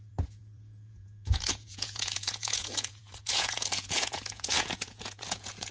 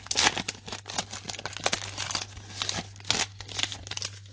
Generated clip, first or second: first